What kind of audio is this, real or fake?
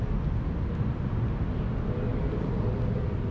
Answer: real